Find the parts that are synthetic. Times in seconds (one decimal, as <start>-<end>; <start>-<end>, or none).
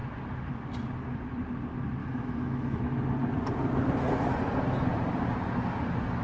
2.0-2.8